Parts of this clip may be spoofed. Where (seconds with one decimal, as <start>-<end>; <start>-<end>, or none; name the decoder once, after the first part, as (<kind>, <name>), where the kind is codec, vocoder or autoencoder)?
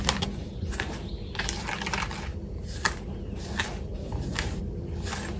0.4-1.5 (vocoder, BigVGAN v2); 2.3-4.6